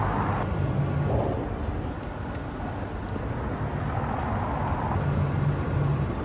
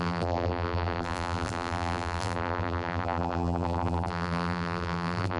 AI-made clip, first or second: second